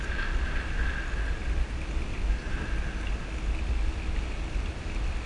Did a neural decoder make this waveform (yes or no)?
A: no